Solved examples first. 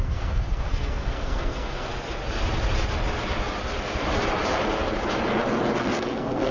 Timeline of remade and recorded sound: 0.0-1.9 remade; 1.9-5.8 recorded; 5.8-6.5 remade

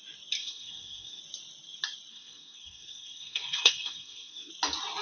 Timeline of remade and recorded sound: 0.0-0.4 recorded; 0.4-1.2 remade; 1.2-2.1 recorded; 2.1-4.5 remade; 4.5-5.0 recorded

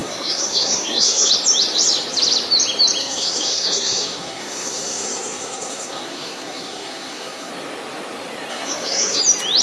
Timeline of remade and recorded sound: 0.0-1.3 remade; 1.3-3.0 recorded; 3.0-7.5 remade; 7.5-8.5 recorded; 8.5-9.2 remade; 9.2-9.6 recorded

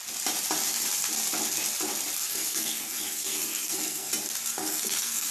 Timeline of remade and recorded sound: 0.0-2.2 recorded; 2.2-4.1 remade; 4.1-4.5 recorded; 4.5-5.3 remade

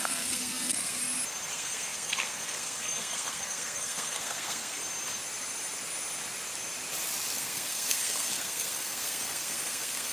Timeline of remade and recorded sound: 0.0-1.0 remade; 1.0-1.5 recorded; 1.5-4.8 remade; 4.8-7.4 recorded; 7.4-10.1 remade

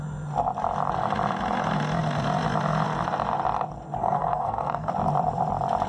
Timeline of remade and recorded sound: 0.0-4.0 recorded; 4.0-4.9 remade; 4.9-5.9 recorded

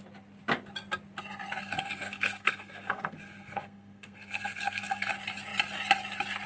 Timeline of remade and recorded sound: 0.0-1.6 recorded; 1.6-5.1 remade; 5.1-6.5 recorded

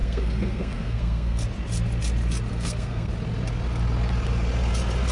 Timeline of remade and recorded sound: 0.0-1.4 remade; 1.4-2.5 recorded; 2.5-3.1 remade; 3.1-5.1 recorded